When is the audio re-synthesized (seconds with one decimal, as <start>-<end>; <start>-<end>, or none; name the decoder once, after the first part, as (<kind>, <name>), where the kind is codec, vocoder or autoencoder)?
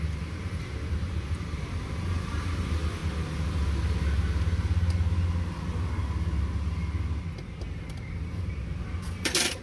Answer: 0.0-3.0 (vocoder, BigVGAN v2); 7.6-9.6